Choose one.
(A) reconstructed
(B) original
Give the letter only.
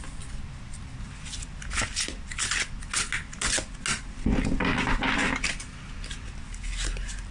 B